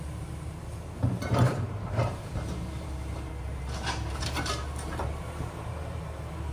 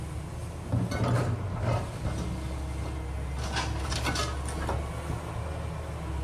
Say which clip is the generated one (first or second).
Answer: first